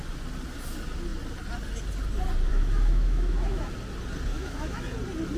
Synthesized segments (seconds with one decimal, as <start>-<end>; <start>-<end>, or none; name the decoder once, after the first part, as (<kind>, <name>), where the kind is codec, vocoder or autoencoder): 2.5-3.7 (autoencoder, DAC-VAE); 4.3-4.8